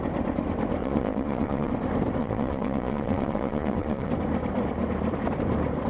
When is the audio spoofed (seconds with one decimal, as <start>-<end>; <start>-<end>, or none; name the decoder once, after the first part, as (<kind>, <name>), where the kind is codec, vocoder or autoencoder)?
0.8-1.7 (vocoder, Vocos); 2.2-4.1